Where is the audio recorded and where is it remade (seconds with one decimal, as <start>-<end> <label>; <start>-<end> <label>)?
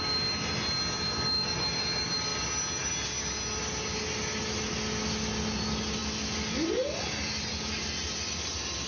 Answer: 0.0-8.9 recorded